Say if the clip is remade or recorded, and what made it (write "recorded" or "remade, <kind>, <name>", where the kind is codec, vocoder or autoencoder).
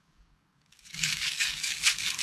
remade, codec, DAC